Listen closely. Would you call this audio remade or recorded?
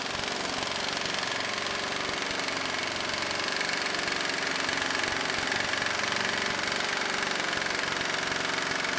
recorded